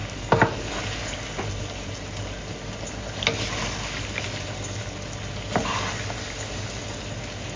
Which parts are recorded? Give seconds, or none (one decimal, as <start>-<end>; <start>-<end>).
0.7-7.6